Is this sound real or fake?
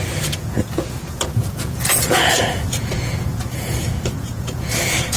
fake